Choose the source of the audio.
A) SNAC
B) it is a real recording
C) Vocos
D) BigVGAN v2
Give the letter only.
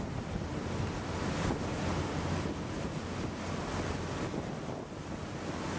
B